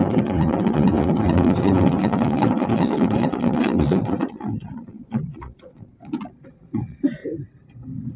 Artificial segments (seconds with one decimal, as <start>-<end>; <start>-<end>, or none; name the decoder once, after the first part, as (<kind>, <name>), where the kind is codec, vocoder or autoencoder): 0.0-7.2 (vocoder, Vocos)